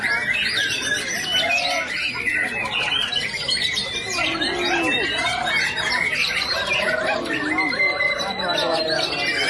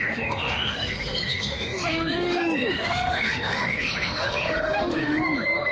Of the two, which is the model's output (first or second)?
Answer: second